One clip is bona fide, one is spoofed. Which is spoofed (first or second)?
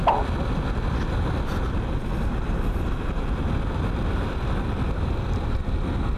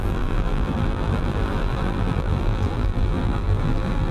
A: second